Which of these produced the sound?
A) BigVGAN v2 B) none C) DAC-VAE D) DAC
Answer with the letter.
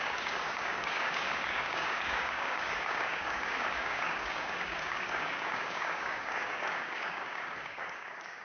D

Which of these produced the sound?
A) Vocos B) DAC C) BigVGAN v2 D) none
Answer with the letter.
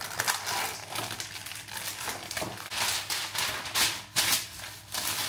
D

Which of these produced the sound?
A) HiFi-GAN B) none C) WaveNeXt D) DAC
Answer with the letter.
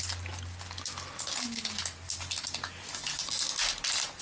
B